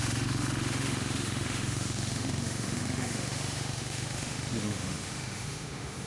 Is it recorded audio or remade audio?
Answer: remade